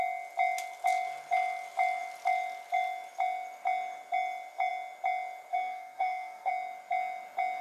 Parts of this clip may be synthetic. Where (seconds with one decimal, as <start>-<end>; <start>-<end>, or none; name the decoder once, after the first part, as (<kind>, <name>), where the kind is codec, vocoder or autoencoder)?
5.5-6.5 (codec, SNAC)